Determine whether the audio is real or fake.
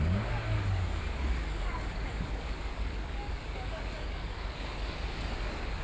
fake